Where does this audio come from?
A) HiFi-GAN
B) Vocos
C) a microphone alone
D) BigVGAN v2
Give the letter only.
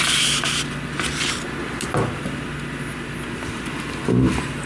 C